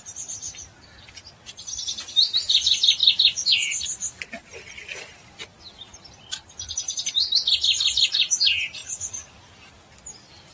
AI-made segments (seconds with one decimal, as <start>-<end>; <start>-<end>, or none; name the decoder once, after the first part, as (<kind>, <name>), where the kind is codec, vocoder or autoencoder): 3.0-4.2 (vocoder, BigVGAN v2)